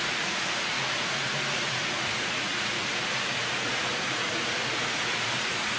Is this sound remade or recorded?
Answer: remade